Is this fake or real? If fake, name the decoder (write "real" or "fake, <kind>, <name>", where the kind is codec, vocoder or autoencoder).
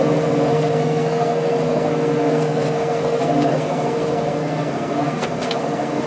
fake, codec, SNAC